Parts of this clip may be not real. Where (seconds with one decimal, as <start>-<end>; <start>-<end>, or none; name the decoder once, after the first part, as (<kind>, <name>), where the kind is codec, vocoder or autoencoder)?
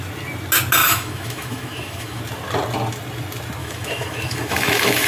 0.8-2.2 (autoencoder, DAC-VAE); 3.6-5.1